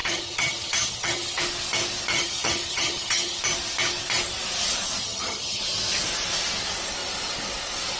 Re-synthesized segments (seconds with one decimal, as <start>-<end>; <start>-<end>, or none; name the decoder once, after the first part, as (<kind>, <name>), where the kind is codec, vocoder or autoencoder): 0.0-1.4 (vocoder, HiFi-GAN); 2.1-3.4; 5.0-5.6